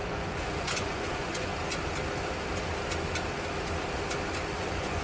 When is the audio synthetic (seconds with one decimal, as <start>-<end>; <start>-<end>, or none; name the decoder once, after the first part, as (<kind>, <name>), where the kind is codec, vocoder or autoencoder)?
0.0-1.5 (vocoder, Vocos); 4.5-5.0